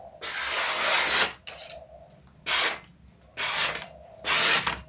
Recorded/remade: recorded